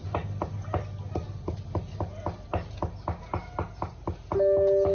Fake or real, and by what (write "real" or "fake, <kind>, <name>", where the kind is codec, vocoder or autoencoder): real